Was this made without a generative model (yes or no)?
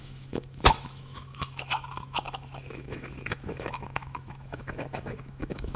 no